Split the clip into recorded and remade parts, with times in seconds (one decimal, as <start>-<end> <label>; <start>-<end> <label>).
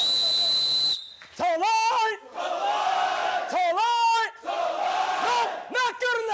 0.0-6.3 recorded